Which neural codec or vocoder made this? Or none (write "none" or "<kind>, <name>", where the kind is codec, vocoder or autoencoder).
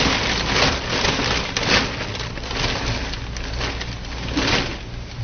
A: none